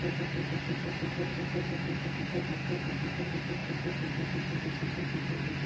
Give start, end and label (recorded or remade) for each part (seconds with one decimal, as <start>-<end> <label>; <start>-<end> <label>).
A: 0.0-1.3 recorded; 1.3-2.2 remade; 2.2-2.6 recorded; 2.6-3.2 remade; 3.2-5.7 recorded